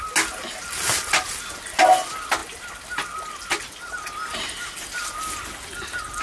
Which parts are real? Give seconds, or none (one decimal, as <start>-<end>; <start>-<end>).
0.0-6.2